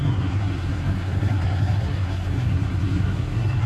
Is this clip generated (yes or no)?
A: yes